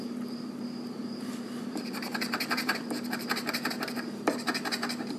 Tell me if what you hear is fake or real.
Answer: fake